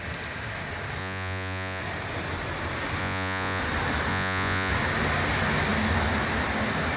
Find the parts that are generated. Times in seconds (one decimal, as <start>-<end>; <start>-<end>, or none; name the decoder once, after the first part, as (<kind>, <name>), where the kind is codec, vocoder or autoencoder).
1.0-1.8 (vocoder, Vocos); 3.0-3.6; 4.1-4.7